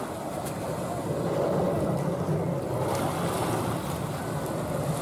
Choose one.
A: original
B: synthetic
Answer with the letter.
A